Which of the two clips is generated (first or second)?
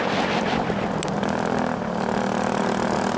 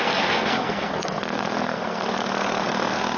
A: second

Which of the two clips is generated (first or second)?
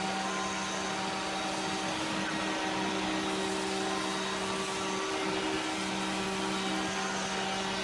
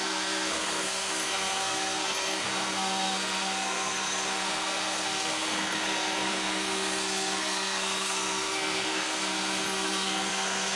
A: second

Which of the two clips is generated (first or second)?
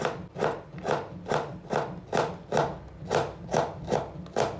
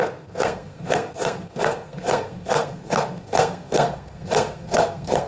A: second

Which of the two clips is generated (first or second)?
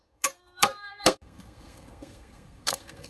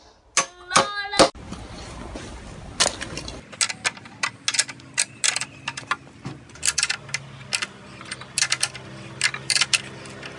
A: first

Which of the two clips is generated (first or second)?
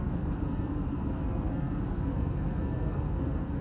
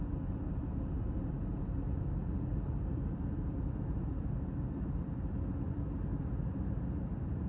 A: first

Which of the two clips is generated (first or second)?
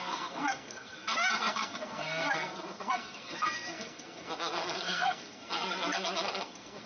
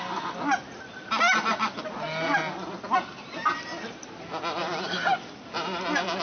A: first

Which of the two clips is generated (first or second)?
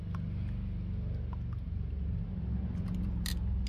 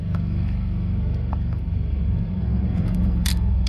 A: second